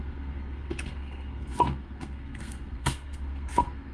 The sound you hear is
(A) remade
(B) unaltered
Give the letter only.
A